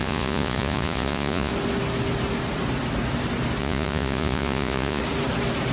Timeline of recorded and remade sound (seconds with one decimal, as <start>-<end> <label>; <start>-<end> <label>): 0.0-1.5 remade; 1.5-3.6 recorded; 3.6-5.0 remade; 5.0-5.7 recorded